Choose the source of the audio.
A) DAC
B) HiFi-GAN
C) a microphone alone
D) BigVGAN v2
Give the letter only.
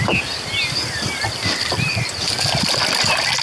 C